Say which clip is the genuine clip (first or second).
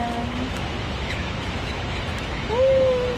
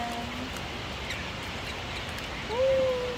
second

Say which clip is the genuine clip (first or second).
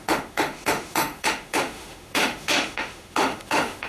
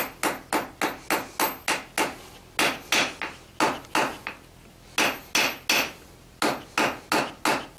second